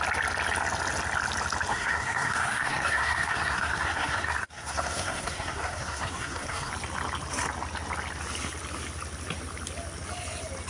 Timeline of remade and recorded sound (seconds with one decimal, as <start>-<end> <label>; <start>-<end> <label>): 0.0-1.7 recorded; 1.7-6.7 remade; 6.7-10.7 recorded